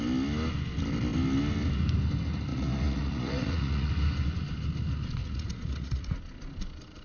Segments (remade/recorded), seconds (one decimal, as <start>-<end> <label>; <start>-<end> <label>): 0.0-2.5 recorded; 2.5-3.9 remade; 3.9-5.2 recorded; 5.2-6.2 remade; 6.2-7.0 recorded